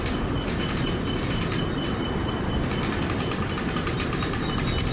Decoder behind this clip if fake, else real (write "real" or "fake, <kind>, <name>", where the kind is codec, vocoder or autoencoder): real